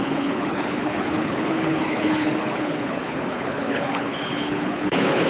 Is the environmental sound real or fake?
fake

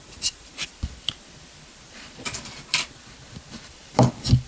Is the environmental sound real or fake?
fake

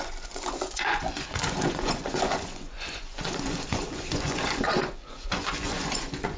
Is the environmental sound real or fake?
fake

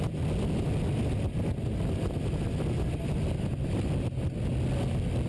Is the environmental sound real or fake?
real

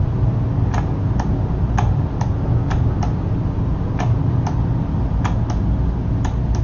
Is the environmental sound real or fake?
real